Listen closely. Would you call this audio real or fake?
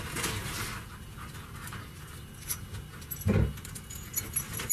real